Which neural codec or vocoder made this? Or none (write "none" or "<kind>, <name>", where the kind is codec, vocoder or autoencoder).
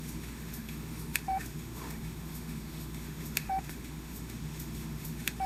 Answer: autoencoder, DAC-VAE